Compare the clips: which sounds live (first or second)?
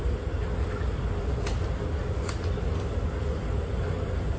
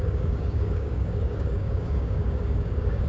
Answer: first